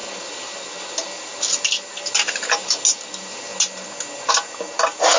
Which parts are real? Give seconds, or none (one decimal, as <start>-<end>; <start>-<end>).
0.0-5.2